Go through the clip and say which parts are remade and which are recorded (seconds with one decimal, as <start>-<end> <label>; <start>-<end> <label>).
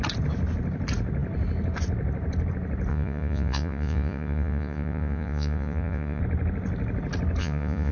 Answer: 0.0-2.9 recorded; 2.9-6.2 remade; 6.2-7.4 recorded; 7.4-7.9 remade